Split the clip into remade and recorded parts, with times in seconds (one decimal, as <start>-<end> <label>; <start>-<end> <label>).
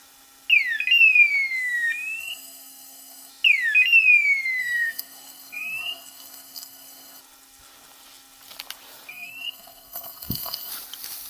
0.0-2.2 recorded; 2.2-3.3 remade; 3.3-4.6 recorded; 4.6-7.2 remade; 7.2-9.1 recorded; 9.1-10.7 remade; 10.7-11.3 recorded